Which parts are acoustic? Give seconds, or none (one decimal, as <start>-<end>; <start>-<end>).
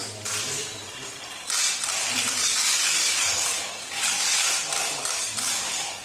0.0-2.4; 4.1-4.8